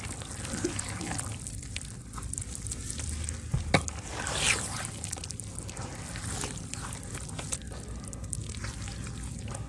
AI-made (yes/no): no